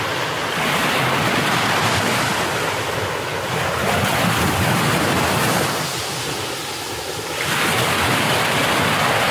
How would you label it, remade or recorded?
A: recorded